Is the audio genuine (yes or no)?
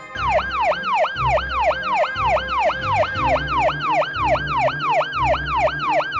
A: yes